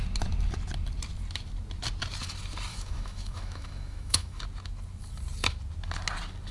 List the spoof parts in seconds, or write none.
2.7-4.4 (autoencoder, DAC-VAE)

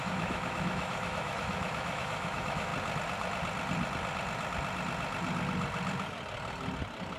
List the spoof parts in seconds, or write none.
0.0-2.7 (autoencoder, DAC-VAE)

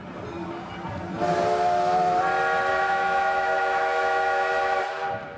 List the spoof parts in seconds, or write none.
2.7-4.8 (autoencoder, DAC-VAE)

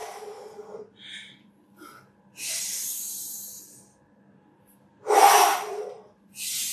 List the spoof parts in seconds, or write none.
none

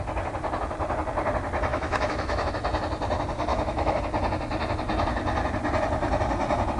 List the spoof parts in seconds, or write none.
1.7-2.5 (autoencoder, DAC-VAE); 3.5-4.0